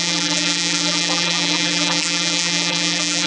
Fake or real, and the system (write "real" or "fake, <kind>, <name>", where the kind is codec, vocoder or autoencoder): fake, vocoder, BigVGAN v2